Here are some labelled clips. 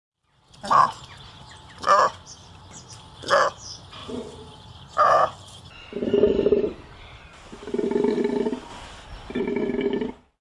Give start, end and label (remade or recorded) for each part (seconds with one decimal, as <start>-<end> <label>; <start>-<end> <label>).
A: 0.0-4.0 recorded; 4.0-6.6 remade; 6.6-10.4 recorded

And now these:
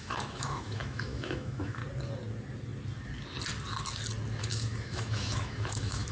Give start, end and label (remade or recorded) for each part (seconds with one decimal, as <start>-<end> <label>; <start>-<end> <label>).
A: 0.0-1.8 remade; 1.8-4.4 recorded; 4.4-6.1 remade

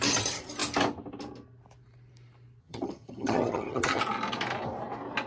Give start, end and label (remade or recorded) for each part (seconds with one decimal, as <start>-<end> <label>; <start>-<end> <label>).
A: 0.0-2.6 recorded; 2.6-4.0 remade; 4.0-5.3 recorded

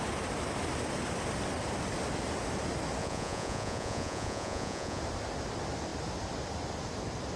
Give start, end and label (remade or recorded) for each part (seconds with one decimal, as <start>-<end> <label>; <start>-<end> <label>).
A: 0.0-3.0 recorded; 3.0-5.0 remade; 5.0-7.4 recorded

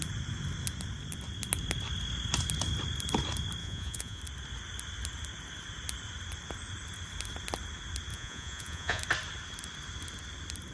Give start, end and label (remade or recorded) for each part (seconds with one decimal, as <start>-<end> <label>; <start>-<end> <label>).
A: 0.0-3.6 recorded; 3.6-4.2 remade; 4.2-8.1 recorded; 8.1-9.0 remade; 9.0-10.7 recorded

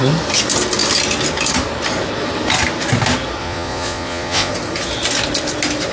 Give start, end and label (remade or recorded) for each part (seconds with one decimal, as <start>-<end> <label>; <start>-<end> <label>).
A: 0.0-3.4 recorded; 3.4-4.5 remade; 4.5-5.9 recorded

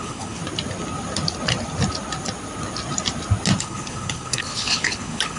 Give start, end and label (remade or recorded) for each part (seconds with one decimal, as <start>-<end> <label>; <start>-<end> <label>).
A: 0.0-0.4 remade; 0.4-3.6 recorded; 3.6-5.4 remade